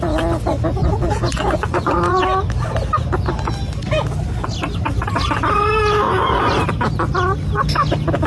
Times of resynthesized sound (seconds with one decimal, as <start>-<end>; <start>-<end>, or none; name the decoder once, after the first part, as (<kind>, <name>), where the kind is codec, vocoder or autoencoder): 0.8-2.2 (vocoder, Vocos)